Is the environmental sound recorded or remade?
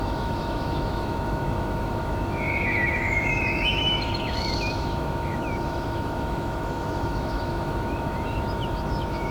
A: remade